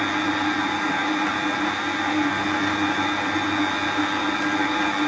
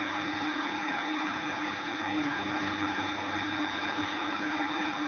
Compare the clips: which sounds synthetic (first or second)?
second